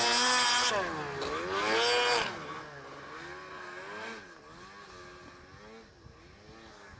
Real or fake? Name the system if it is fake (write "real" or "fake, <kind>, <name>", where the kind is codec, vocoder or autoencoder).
real